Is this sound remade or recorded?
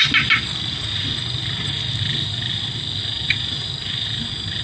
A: recorded